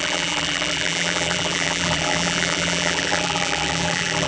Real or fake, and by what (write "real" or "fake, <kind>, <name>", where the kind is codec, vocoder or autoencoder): fake, vocoder, BigVGAN v2